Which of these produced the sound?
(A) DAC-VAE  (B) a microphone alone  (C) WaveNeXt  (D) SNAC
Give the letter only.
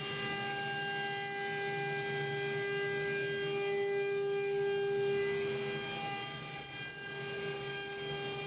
B